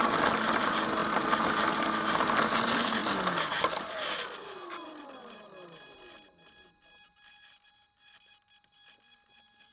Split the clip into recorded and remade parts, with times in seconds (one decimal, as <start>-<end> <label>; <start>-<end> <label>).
0.0-9.7 recorded